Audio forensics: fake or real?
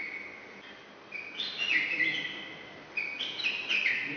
real